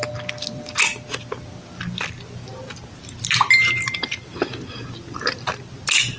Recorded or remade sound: recorded